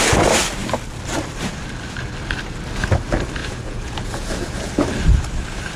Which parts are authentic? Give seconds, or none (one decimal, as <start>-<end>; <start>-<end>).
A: 0.0-3.4; 4.7-5.8